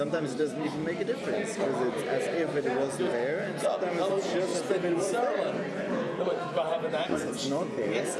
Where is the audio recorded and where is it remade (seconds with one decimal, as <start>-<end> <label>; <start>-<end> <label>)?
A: 0.0-0.8 remade; 0.8-4.1 recorded; 4.1-8.2 remade